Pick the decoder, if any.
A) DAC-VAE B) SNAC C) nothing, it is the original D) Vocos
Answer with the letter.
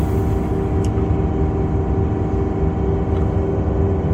C